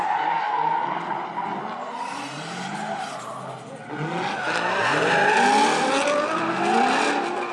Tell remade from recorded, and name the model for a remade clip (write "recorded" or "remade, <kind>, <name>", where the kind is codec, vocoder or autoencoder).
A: recorded